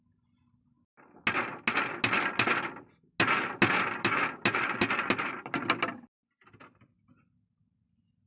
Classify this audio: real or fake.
real